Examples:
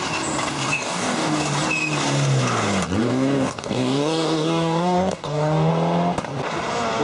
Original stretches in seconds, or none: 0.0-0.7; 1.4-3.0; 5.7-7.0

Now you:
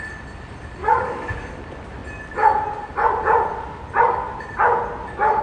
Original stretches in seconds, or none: 0.0-0.8; 1.6-5.4

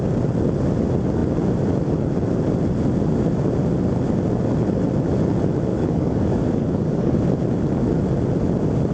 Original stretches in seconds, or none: 0.0-5.7; 7.2-8.9

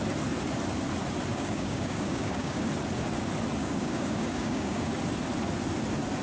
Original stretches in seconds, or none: 0.0-1.3; 2.7-3.6; 4.9-6.2